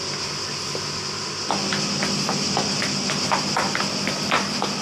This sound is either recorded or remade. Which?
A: recorded